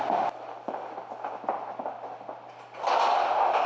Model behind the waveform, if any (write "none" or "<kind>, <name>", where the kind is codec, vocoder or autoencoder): none